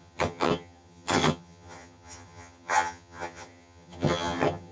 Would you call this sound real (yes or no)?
no